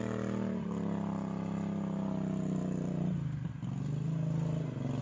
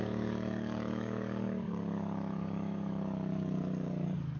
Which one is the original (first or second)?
first